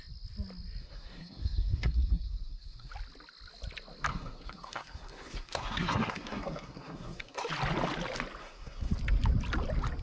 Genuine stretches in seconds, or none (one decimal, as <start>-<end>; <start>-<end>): 0.0-0.8; 2.9-4.1; 7.5-8.4; 8.9-10.0